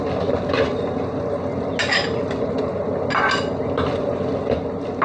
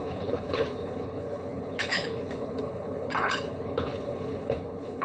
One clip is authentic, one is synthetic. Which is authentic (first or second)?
first